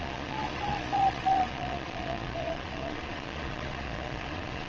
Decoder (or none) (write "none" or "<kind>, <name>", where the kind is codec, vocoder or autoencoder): vocoder, Vocos